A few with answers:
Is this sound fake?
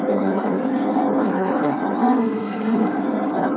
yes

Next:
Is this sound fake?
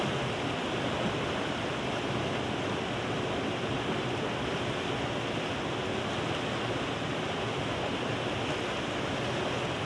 no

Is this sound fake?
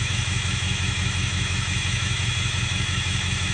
yes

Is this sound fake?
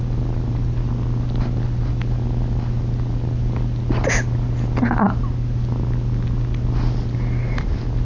no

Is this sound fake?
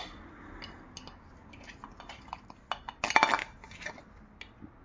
no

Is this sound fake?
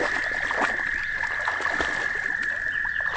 no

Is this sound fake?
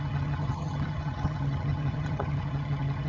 yes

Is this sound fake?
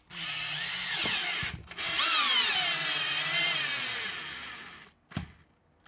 no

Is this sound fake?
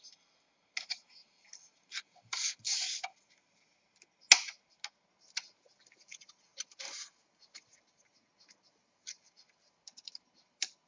no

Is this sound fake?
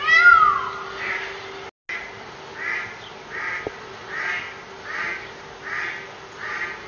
no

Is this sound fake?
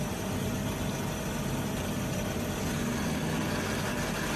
no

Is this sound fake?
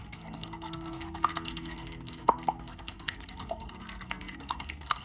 yes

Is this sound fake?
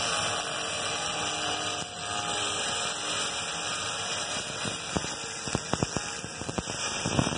no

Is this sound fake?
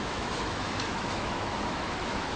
yes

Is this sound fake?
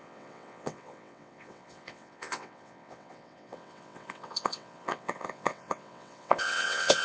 yes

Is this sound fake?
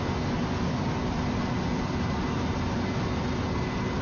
no